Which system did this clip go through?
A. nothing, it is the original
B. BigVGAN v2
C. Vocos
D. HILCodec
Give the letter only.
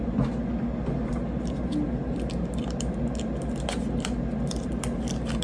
A